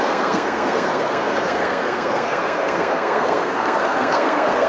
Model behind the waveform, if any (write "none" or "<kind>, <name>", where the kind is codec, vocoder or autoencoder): codec, SNAC